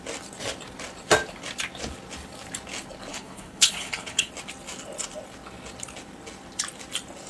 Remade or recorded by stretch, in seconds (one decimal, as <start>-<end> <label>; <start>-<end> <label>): 0.0-3.1 recorded; 3.1-4.3 remade; 4.3-7.3 recorded